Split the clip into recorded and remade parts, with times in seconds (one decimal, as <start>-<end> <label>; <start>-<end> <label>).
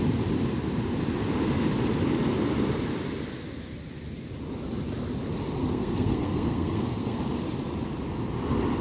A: 0.0-5.6 recorded; 5.6-7.2 remade; 7.2-8.8 recorded